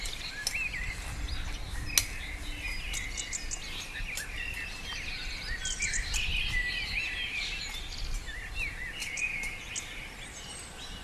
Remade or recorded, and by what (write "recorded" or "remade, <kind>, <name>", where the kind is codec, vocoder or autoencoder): recorded